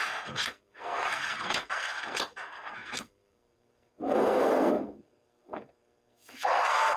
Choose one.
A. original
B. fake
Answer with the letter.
B